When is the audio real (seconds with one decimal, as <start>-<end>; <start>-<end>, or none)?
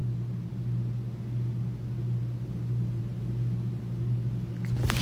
0.0-5.0